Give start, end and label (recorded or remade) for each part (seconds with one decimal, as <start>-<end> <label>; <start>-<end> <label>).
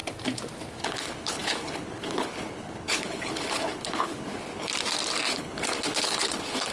0.0-0.8 recorded; 0.8-4.7 remade; 4.7-5.3 recorded; 5.3-6.7 remade